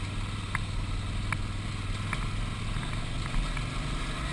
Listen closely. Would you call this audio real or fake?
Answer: real